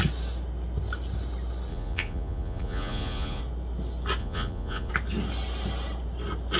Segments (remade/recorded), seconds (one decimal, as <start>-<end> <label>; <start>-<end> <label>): 0.0-1.7 recorded; 1.7-3.4 remade; 3.4-4.2 recorded; 4.2-4.9 remade; 4.9-6.6 recorded